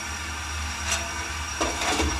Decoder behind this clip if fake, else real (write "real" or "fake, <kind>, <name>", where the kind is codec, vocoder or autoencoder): real